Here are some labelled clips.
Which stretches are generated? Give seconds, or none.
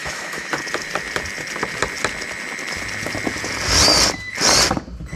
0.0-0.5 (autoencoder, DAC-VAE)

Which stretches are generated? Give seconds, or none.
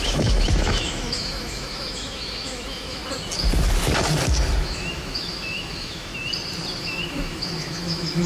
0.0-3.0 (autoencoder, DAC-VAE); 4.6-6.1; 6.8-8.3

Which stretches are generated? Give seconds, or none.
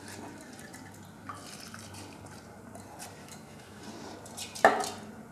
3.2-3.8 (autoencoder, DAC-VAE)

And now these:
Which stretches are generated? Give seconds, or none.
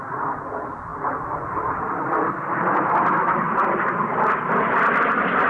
none